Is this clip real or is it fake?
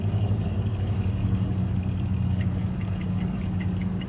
fake